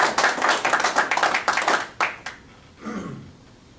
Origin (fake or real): real